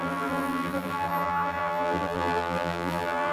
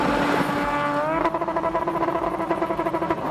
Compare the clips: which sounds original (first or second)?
second